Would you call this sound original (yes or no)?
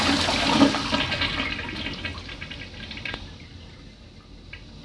yes